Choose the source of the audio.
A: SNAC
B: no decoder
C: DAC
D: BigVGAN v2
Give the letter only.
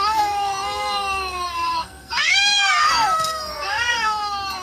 A